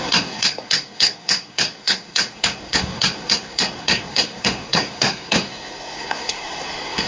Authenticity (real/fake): fake